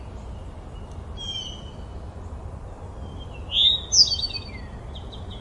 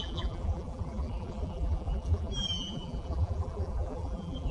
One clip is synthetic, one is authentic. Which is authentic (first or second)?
first